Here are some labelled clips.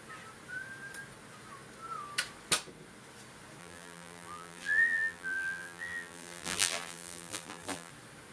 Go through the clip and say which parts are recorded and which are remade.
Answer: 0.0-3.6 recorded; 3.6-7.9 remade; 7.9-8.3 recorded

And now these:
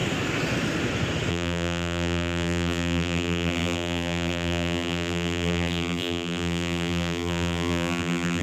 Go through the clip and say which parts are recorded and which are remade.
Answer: 0.0-1.3 recorded; 1.3-8.4 remade